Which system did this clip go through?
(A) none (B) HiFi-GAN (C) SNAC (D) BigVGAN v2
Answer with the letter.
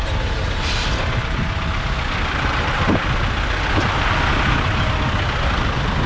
A